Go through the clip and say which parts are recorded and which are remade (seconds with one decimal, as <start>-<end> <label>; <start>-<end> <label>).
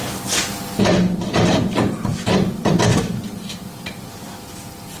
0.0-0.8 recorded; 0.8-5.0 remade